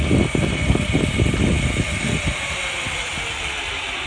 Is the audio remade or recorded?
recorded